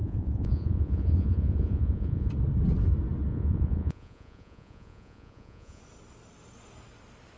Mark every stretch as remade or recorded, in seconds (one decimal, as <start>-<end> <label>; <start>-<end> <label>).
0.0-2.3 remade; 2.3-3.3 recorded; 3.3-5.8 remade; 5.8-7.4 recorded

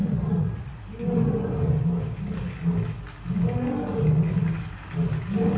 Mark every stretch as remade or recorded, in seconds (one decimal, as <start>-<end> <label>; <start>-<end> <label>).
0.0-0.8 remade; 0.8-5.6 recorded

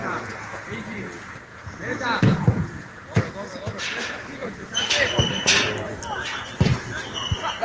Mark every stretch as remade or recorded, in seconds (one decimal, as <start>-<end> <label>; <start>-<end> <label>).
0.0-1.1 remade; 1.1-1.5 recorded; 1.5-3.2 remade; 3.2-4.4 recorded; 4.4-4.9 remade; 4.9-7.6 recorded

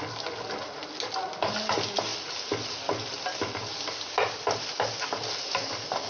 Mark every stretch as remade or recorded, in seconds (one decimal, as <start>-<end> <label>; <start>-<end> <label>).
0.0-6.1 recorded

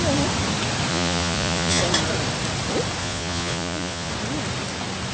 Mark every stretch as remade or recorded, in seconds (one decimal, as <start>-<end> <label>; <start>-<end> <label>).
0.0-0.9 recorded; 0.9-1.8 remade; 1.8-3.0 recorded; 3.0-4.1 remade; 4.1-5.1 recorded

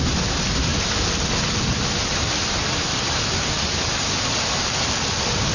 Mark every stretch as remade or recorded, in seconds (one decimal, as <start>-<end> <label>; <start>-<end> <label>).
0.0-5.5 recorded

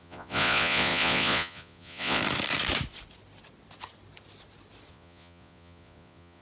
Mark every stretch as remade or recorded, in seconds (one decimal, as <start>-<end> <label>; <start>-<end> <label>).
0.0-2.2 remade; 2.2-4.9 recorded; 4.9-6.4 remade

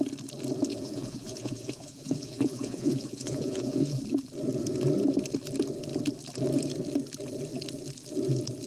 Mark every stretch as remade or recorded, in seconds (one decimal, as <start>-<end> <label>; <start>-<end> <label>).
0.0-0.7 recorded; 0.7-4.0 remade; 4.0-8.7 recorded